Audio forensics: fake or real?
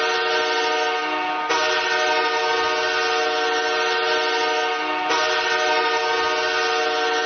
real